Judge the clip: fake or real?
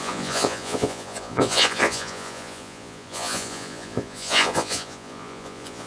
fake